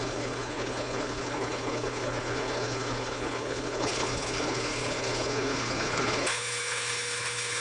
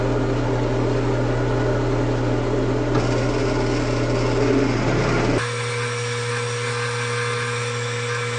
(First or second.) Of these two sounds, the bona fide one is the second